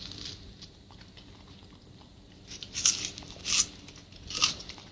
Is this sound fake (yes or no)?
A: no